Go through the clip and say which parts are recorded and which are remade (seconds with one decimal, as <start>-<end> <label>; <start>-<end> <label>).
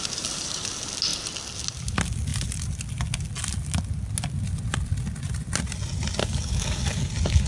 0.0-6.2 recorded; 6.2-7.1 remade; 7.1-7.5 recorded